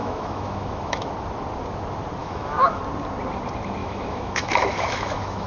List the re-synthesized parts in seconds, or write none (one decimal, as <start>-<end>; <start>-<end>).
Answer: 0.0-1.1; 2.2-2.8; 3.8-5.5